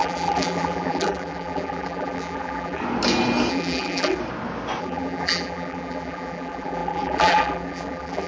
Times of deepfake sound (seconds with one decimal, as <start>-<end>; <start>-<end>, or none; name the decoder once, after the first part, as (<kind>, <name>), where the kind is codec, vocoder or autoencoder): 0.0-2.8 (vocoder, BigVGAN v2); 3.5-4.2; 4.8-8.3